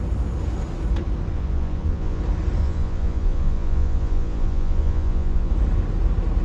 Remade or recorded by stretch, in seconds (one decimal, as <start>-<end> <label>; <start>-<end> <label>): 0.0-1.3 recorded; 1.3-2.2 remade; 2.2-2.6 recorded; 2.6-5.5 remade; 5.5-6.4 recorded